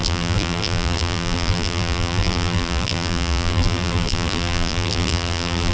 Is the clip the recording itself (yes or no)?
no